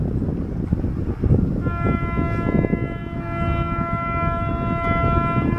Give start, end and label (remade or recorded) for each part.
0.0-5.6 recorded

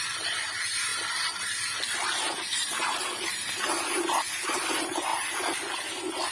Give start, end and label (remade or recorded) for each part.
0.0-0.9 remade; 0.9-2.0 recorded; 2.0-6.3 remade

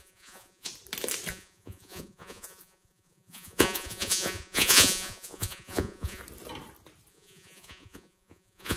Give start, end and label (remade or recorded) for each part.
0.0-0.7 remade; 0.7-1.3 recorded; 1.3-6.2 remade; 6.2-7.1 recorded; 7.1-8.8 remade

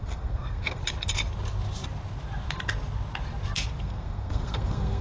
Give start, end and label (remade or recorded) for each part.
0.0-0.8 remade; 0.8-3.8 recorded; 3.8-5.0 remade